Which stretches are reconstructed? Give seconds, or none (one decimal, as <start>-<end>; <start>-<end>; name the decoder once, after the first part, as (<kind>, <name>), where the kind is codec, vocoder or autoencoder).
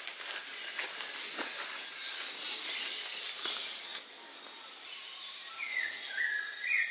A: 5.7-6.9 (vocoder, Vocos)